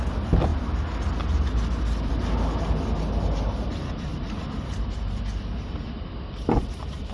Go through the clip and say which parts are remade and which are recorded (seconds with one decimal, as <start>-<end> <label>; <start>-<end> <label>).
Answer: 0.0-4.1 recorded; 4.1-5.7 remade; 5.7-7.1 recorded